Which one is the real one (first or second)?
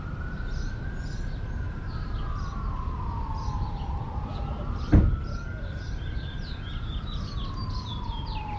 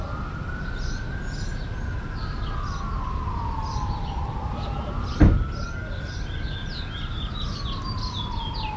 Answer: second